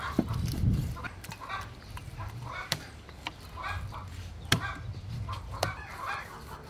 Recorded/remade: remade